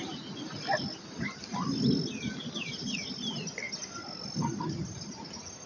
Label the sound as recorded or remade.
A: recorded